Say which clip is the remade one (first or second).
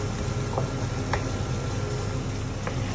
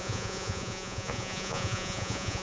second